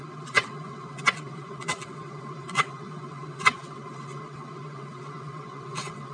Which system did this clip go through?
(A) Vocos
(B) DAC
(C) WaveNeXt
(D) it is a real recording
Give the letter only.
C